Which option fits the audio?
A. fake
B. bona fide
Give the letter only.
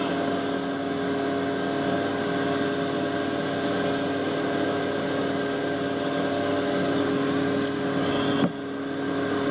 B